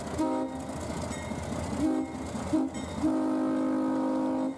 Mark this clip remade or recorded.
recorded